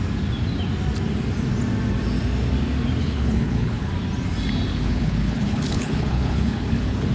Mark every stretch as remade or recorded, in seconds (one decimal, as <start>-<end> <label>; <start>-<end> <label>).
0.0-3.0 recorded; 3.0-3.9 remade; 3.9-4.7 recorded; 4.7-7.1 remade

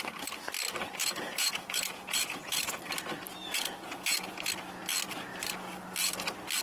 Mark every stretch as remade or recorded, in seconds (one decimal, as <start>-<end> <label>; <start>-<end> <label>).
0.0-1.0 recorded; 1.0-2.8 remade; 2.8-3.4 recorded; 3.4-4.5 remade; 4.5-6.6 recorded

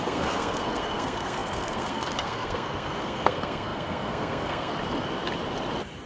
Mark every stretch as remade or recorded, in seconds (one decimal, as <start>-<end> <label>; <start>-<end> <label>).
0.0-4.7 remade; 4.7-6.1 recorded

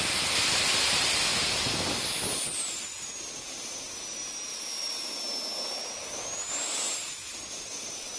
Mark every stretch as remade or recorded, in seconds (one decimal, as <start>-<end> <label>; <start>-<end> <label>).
0.0-4.5 recorded; 4.5-5.2 remade; 5.2-8.2 recorded

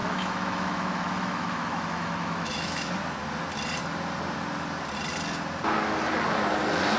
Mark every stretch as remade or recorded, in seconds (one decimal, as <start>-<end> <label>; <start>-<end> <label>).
0.0-2.9 remade; 2.9-7.0 recorded

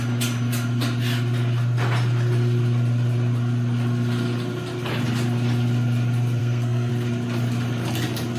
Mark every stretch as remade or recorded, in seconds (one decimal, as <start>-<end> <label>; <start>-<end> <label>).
0.0-6.4 recorded; 6.4-6.9 remade; 6.9-8.4 recorded